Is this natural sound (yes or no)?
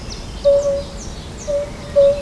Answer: yes